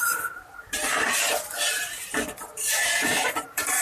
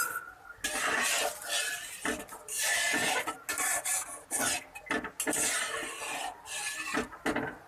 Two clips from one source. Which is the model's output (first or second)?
first